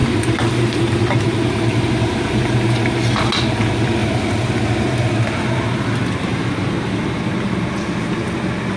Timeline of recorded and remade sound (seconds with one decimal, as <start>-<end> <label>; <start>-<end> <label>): 0.0-2.9 remade; 2.9-4.0 recorded; 4.0-4.5 remade; 4.5-6.3 recorded; 6.3-6.9 remade; 6.9-8.8 recorded